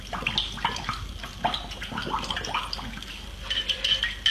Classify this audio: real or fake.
real